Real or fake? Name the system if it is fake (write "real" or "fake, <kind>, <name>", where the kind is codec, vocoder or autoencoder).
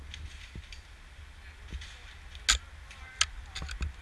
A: real